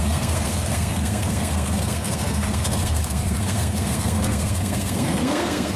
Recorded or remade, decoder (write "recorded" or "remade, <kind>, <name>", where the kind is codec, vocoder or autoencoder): remade, codec, SNAC